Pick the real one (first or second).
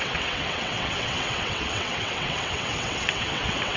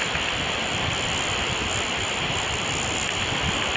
second